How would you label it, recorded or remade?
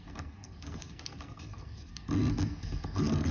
remade